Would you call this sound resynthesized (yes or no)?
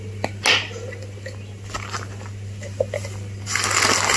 no